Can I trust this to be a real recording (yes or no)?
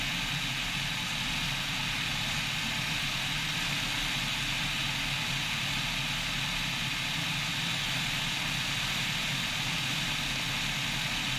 yes